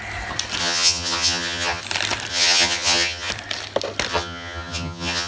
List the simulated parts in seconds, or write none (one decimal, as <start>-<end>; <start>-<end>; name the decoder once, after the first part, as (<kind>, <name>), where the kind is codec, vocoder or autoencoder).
0.6-1.8 (vocoder, HiFi-GAN); 2.3-3.3; 4.1-5.3